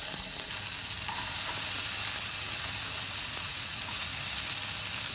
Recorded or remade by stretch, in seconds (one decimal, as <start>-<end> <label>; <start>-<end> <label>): 0.0-3.1 recorded; 3.1-4.1 remade; 4.1-5.1 recorded